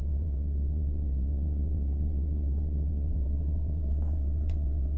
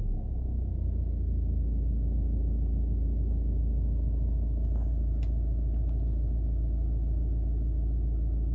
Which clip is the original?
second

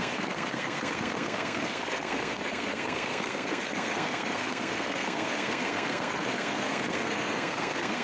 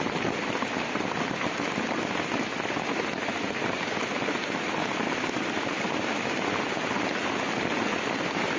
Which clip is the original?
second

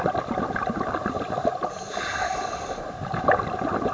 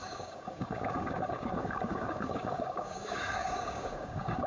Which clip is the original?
first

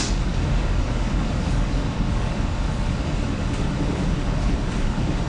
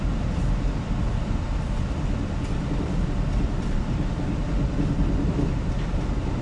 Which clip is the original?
second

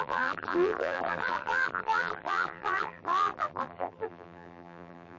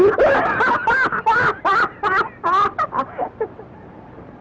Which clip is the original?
second